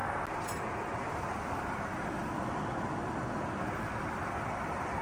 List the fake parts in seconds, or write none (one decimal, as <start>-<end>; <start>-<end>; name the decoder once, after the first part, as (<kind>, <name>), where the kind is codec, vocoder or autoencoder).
0.7-5.0 (vocoder, BigVGAN v2)